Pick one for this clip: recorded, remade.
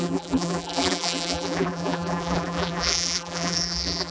remade